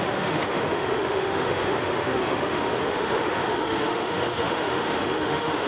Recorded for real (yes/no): no